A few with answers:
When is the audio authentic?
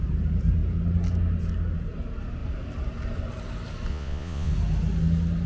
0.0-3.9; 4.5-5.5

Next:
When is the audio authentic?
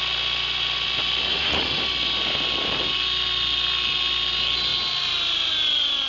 0.0-1.3; 1.8-6.1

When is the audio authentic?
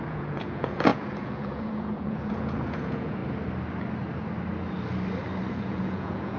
3.2-5.5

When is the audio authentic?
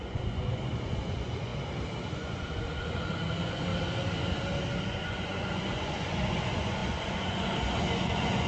1.5-2.1; 3.7-4.8